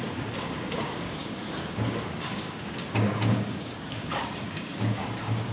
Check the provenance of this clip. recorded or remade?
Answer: remade